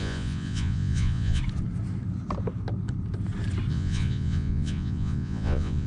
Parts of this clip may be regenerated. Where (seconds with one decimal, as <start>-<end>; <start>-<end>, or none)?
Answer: 0.0-1.4; 3.7-5.9